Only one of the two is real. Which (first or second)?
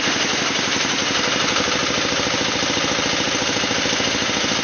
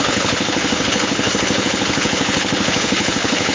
first